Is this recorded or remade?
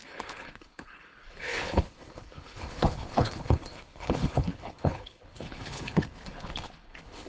remade